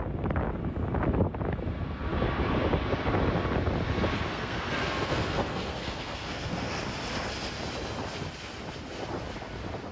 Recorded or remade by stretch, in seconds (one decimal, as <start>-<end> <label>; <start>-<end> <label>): 0.0-4.3 recorded; 4.3-6.8 remade; 6.8-9.9 recorded

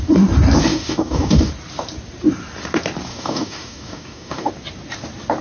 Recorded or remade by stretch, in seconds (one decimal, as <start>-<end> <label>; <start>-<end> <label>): 0.0-0.7 recorded; 0.7-1.5 remade; 1.5-3.1 recorded; 3.1-4.5 remade; 4.5-5.4 recorded

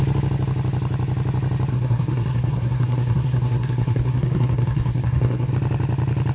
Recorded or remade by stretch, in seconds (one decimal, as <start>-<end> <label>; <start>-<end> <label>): 0.0-1.7 recorded; 1.7-5.5 remade; 5.5-6.3 recorded

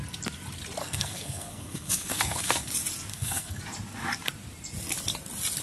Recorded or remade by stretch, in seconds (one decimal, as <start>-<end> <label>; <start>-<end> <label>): 0.0-0.8 recorded; 0.8-2.7 remade; 2.7-3.1 recorded; 3.1-3.6 remade; 3.6-5.6 recorded

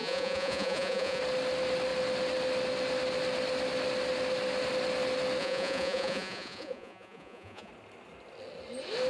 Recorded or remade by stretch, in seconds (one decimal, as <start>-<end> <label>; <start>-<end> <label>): 0.0-1.2 remade; 1.2-5.4 recorded; 5.4-7.7 remade; 7.7-9.1 recorded

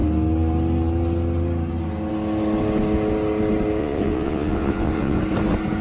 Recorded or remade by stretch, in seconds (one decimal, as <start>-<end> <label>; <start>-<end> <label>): 0.0-3.8 recorded; 3.8-5.2 remade; 5.2-5.8 recorded

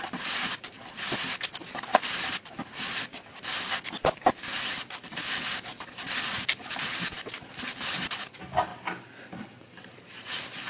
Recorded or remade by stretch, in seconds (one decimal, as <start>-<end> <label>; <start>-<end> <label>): 0.0-10.7 recorded

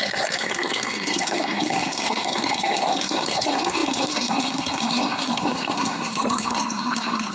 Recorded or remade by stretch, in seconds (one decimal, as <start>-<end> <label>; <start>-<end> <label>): 0.0-7.3 remade